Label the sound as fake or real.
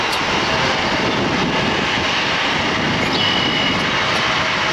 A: real